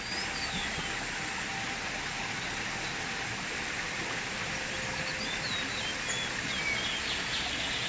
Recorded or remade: recorded